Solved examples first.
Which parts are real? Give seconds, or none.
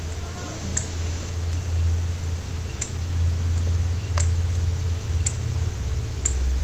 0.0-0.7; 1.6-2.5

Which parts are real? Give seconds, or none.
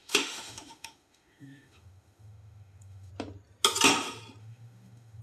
3.1-4.4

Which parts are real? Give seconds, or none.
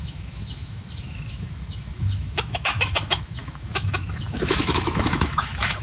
none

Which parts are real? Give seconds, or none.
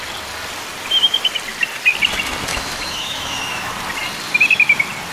0.0-2.5; 3.7-5.1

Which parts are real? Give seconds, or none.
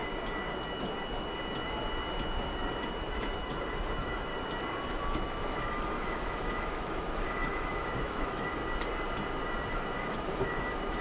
0.0-3.1; 4.3-4.9; 8.6-9.7